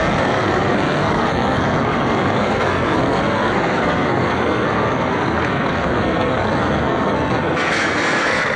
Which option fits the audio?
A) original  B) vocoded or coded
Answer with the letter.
B